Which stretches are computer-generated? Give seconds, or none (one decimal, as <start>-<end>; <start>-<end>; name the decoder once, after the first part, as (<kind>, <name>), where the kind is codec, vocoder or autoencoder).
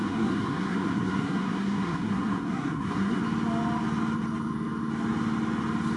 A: 0.0-3.2 (codec, SNAC)